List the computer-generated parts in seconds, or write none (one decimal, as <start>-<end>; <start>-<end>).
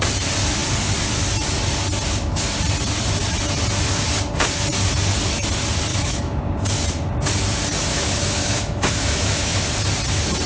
5.9-6.4; 7.9-9.6